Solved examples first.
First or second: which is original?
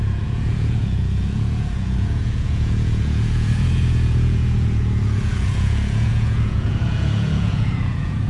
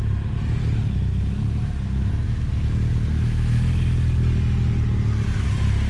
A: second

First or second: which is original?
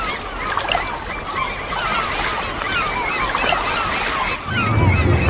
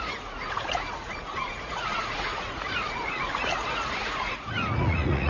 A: first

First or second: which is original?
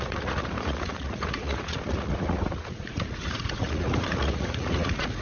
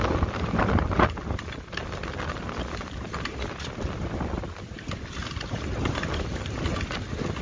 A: second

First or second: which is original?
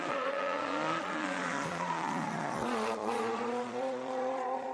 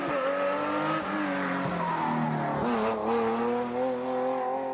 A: second